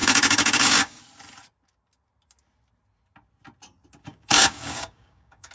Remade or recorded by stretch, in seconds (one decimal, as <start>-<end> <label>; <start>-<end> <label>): 0.0-1.0 remade; 1.0-4.1 recorded; 4.1-5.5 remade